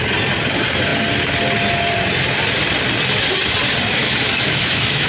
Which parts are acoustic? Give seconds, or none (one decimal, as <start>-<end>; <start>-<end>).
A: 0.0-4.0